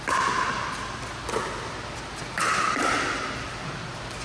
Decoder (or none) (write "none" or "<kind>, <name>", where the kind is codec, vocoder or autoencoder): none